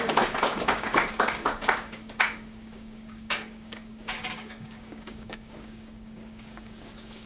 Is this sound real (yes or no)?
no